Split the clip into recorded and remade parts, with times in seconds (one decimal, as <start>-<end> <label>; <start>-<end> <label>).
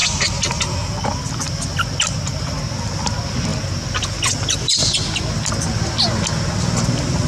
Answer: 0.0-7.3 recorded